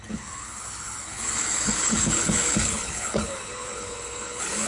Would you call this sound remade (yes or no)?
yes